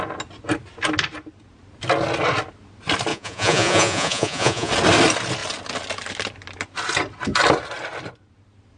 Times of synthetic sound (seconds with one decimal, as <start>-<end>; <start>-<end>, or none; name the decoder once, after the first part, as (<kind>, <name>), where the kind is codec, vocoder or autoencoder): 3.1-4.7 (vocoder, Vocos)